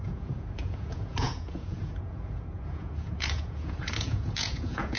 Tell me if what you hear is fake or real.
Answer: fake